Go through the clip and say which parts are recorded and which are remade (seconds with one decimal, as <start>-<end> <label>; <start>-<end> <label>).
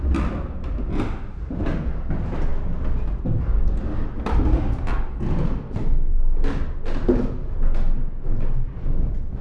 0.0-9.4 recorded